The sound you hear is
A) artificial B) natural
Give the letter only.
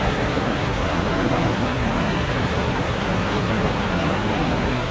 A